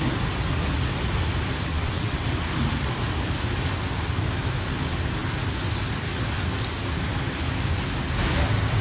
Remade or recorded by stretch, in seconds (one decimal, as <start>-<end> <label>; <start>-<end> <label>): 0.0-1.7 recorded; 1.7-2.4 remade; 2.4-8.8 recorded